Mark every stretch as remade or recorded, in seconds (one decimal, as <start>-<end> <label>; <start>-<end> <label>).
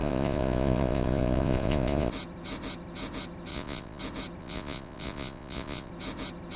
0.0-2.1 remade; 2.1-3.5 recorded; 3.5-4.0 remade; 4.0-4.4 recorded; 4.4-5.9 remade; 5.9-6.6 recorded